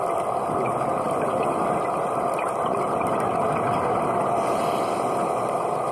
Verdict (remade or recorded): remade